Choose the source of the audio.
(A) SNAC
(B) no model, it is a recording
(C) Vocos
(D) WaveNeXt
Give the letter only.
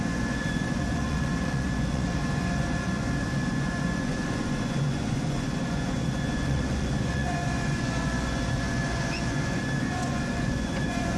C